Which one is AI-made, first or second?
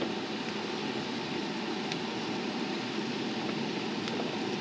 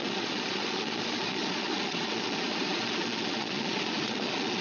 second